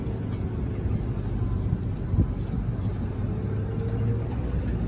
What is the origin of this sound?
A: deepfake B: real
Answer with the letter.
B